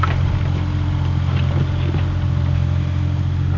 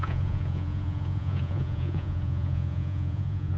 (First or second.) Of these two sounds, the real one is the first